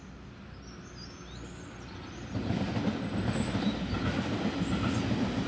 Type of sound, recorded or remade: recorded